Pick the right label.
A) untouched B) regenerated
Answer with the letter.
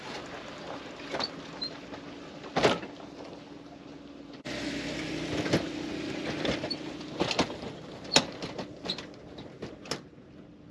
A